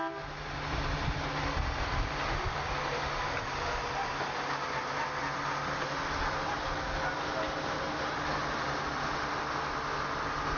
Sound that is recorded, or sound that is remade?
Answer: recorded